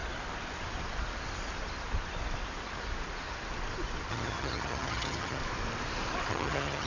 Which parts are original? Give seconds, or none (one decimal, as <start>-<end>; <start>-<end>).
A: 0.0-4.1; 5.4-6.3